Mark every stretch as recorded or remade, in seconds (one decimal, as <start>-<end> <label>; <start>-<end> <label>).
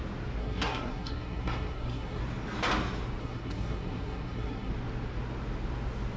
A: 0.0-0.4 recorded; 0.4-2.2 remade; 2.2-3.2 recorded; 3.2-4.7 remade; 4.7-6.2 recorded